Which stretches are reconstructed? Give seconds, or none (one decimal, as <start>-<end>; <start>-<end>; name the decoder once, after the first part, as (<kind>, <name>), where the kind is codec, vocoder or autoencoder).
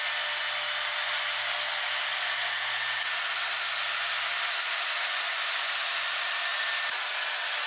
none